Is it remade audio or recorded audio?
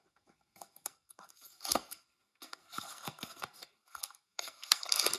remade